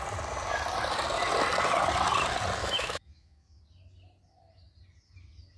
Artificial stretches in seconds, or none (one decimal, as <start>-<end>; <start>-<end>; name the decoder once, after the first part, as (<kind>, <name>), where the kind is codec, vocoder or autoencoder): 2.6-3.6 (autoencoder, DAC-VAE)